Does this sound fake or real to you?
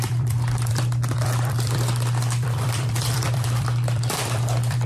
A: fake